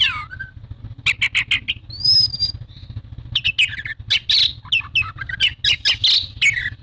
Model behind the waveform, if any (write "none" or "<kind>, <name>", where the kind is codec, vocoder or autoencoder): none